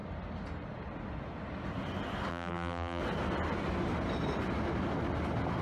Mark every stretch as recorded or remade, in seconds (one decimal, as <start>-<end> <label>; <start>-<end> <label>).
0.0-2.3 recorded; 2.3-3.0 remade; 3.0-5.6 recorded